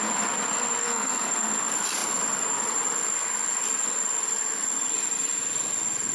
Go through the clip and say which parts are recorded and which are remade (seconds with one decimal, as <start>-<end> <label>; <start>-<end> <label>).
0.0-0.8 recorded; 0.8-1.5 remade; 1.5-6.1 recorded